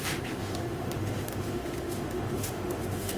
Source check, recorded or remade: remade